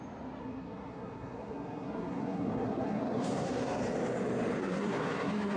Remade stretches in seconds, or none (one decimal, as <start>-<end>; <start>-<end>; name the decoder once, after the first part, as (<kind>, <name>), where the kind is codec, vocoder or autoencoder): 0.4-3.8 (codec, SNAC); 4.6-5.6